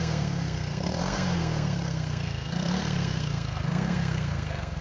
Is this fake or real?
fake